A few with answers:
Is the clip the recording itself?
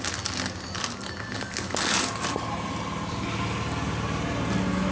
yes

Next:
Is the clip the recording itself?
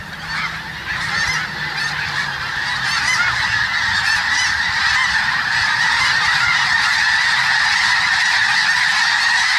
yes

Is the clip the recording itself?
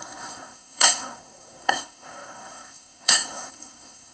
no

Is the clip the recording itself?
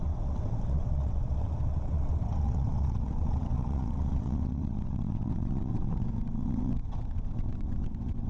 no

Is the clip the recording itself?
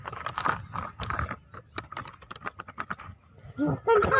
yes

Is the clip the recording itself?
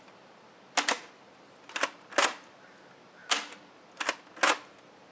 yes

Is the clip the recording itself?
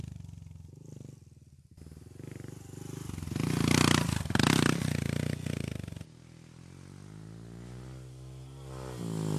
yes